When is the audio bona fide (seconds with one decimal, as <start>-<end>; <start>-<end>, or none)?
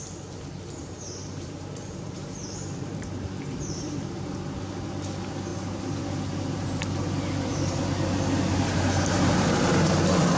0.0-0.8; 4.6-5.5; 6.0-10.4